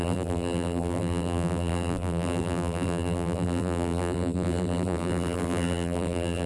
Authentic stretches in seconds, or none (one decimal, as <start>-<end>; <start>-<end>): none